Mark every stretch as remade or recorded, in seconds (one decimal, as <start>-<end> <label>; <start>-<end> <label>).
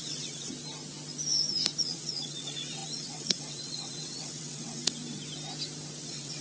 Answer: 0.0-0.5 remade; 0.5-1.8 recorded; 1.8-5.0 remade; 5.0-6.0 recorded; 6.0-6.4 remade